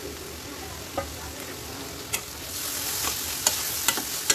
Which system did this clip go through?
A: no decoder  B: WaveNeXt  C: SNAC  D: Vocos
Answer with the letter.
A